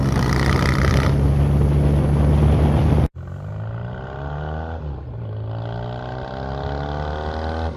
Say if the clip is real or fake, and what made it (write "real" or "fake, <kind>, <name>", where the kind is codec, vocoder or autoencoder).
real